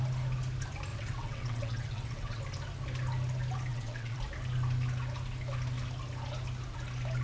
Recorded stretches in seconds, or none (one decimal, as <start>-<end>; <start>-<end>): 0.0-0.9; 2.4-3.7; 4.2-7.2

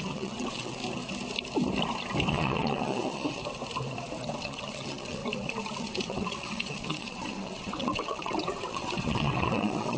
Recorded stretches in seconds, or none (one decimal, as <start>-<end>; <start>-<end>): 0.8-2.3; 3.4-4.4; 5.2-5.8

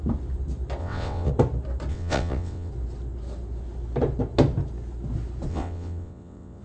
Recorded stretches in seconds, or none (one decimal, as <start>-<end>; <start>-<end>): 0.0-0.8; 1.3-1.9; 2.7-5.5